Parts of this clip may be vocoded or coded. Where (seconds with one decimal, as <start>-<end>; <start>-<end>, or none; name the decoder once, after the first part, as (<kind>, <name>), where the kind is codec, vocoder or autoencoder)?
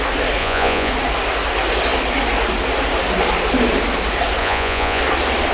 0.4-0.9 (vocoder, Vocos); 4.4-5.0